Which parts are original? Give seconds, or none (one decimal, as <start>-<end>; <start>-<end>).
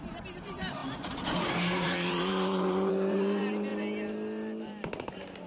3.7-5.1